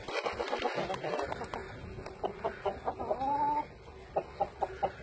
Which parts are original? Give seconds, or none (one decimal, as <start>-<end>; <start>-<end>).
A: 0.0-5.0